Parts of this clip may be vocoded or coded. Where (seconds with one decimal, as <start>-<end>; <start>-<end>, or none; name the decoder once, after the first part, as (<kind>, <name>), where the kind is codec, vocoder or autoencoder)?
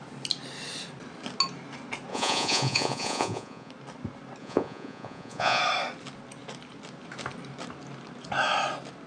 2.1-3.7 (vocoder, Vocos); 4.4-5.6